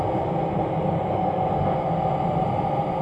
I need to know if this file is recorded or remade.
recorded